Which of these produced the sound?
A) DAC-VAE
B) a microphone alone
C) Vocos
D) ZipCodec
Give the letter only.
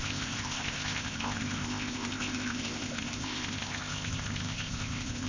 D